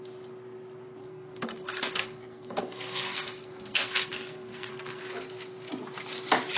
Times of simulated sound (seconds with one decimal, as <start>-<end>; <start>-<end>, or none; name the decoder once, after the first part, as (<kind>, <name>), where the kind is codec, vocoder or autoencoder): 1.0-5.0 (codec, SNAC)